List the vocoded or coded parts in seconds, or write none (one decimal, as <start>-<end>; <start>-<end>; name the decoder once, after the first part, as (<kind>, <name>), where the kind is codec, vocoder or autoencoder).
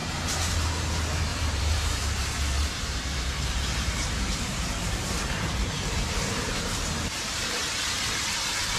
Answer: 0.0-0.5 (vocoder, BigVGAN v2); 1.3-2.0; 2.6-7.6